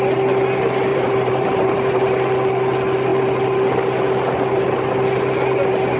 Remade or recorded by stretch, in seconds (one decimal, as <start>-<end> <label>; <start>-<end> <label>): 0.0-0.9 recorded; 0.9-2.1 remade; 2.1-6.0 recorded